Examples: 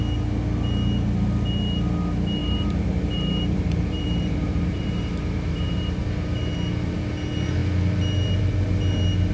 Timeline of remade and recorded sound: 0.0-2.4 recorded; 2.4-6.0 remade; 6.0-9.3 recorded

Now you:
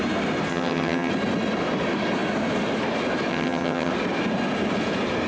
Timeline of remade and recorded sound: 0.0-0.5 recorded; 0.5-1.1 remade; 1.1-3.3 recorded; 3.3-3.9 remade; 3.9-5.3 recorded

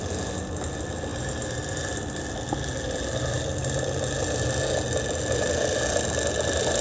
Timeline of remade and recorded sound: 0.0-6.8 recorded

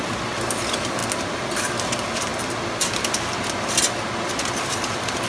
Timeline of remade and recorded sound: 0.0-5.3 recorded

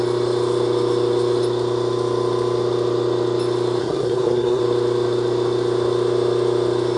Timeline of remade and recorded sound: 0.0-3.8 recorded; 3.8-4.6 remade; 4.6-7.0 recorded

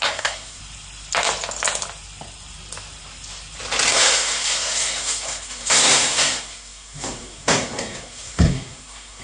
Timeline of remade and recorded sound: 0.0-0.6 remade; 0.6-3.9 recorded; 3.9-9.2 remade

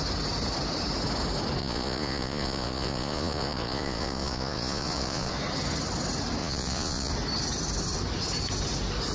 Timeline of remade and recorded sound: 0.0-1.6 recorded; 1.6-5.3 remade; 5.3-6.4 recorded; 6.4-7.1 remade; 7.1-9.1 recorded

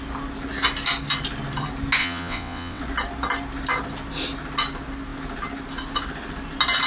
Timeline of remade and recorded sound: 0.0-2.0 recorded; 2.0-2.8 remade; 2.8-6.9 recorded